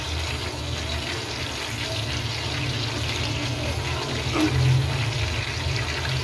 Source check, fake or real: real